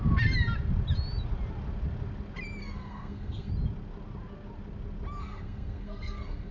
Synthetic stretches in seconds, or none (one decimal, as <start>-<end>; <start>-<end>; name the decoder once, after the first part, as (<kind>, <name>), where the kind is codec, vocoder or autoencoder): 2.6-3.5 (codec, SNAC); 5.2-6.5